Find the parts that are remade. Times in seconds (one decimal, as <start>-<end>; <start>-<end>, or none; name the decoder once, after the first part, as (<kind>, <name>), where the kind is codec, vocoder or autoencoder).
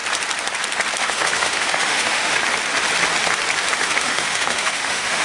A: 1.0-2.4 (autoencoder, DAC-VAE); 3.7-5.2